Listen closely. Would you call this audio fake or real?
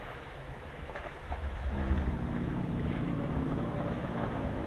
fake